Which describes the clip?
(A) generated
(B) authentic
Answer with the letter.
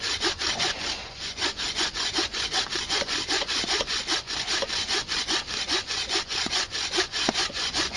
A